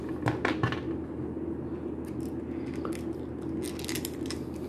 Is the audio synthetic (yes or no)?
no